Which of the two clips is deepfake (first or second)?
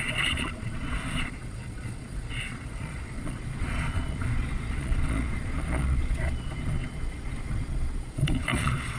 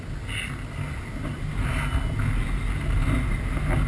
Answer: first